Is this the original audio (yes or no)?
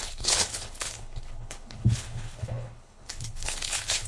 no